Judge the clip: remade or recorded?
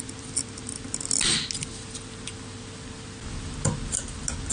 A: recorded